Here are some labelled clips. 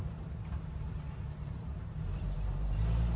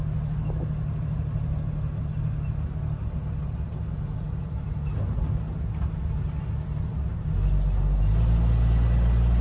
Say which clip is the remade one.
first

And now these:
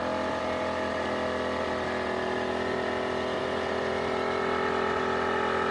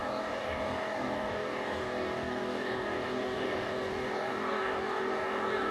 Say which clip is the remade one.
second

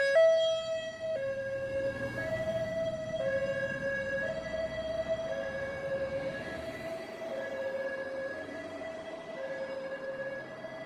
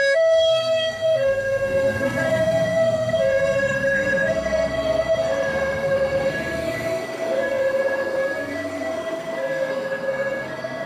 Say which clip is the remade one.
second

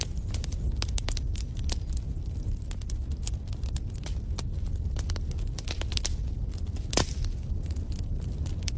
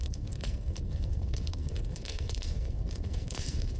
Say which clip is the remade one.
second